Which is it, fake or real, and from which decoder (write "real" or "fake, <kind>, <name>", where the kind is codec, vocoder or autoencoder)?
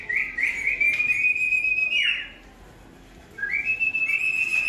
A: real